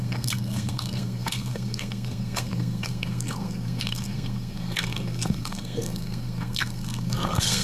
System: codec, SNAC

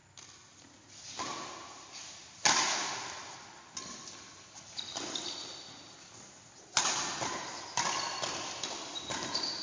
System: none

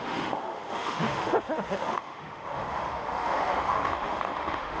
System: autoencoder, DAC-VAE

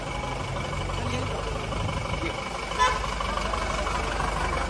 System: none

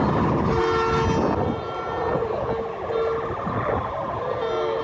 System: none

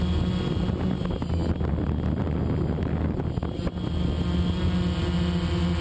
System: none